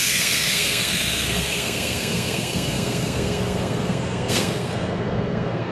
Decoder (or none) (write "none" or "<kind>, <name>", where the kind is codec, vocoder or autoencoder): codec, SNAC